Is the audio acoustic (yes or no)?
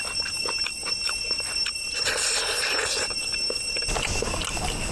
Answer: yes